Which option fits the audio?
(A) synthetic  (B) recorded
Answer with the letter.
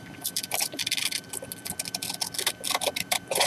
B